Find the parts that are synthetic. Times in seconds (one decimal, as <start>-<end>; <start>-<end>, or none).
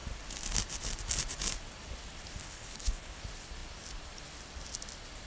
2.4-3.2